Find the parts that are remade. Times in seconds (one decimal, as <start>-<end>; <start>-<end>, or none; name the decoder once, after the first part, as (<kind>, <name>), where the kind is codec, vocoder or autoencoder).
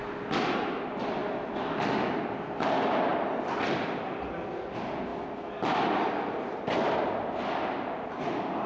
none